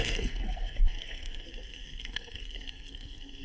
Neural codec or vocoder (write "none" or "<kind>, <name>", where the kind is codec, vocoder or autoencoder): codec, SNAC